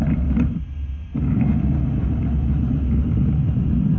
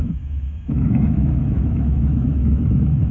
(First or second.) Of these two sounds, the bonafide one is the first